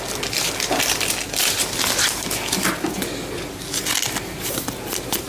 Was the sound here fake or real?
real